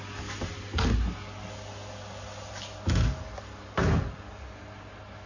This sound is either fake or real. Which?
real